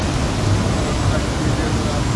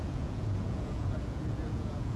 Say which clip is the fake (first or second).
second